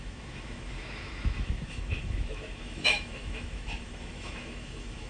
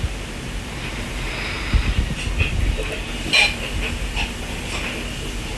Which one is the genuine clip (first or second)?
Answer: second